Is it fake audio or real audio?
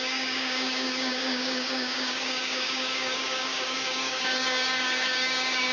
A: fake